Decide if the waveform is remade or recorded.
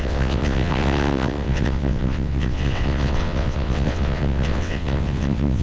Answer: remade